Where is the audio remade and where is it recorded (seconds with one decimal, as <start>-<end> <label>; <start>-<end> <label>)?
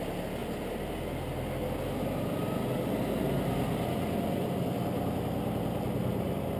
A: 0.0-0.4 remade; 0.4-4.3 recorded; 4.3-6.6 remade